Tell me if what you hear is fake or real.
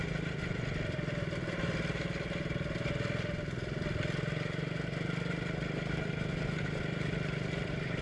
real